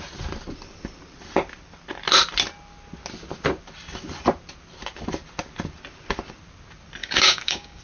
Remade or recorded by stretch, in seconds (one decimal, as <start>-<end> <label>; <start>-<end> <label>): 0.0-7.0 recorded; 7.0-7.8 remade